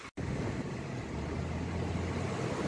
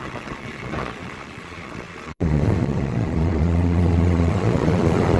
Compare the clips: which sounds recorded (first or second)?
first